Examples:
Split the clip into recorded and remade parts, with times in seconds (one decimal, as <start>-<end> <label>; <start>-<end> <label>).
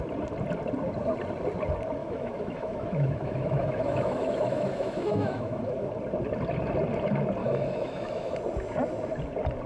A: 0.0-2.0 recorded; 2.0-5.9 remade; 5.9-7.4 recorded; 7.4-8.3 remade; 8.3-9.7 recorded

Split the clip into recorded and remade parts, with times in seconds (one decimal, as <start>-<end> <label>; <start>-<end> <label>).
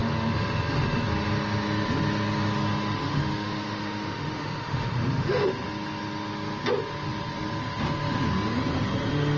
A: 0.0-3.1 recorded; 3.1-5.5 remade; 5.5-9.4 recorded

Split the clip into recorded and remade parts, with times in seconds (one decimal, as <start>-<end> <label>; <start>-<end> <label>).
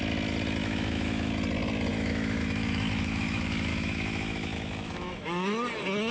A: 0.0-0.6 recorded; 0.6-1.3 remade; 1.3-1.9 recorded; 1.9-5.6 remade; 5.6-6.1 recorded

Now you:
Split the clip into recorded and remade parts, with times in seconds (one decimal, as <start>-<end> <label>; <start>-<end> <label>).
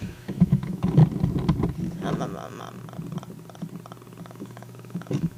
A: 0.0-1.0 remade; 1.0-4.2 recorded; 4.2-5.4 remade